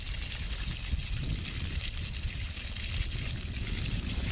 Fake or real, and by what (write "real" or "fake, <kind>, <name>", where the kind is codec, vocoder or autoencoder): real